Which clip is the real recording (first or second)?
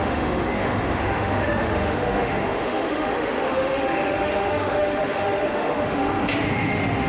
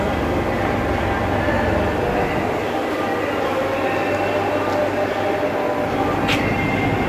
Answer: second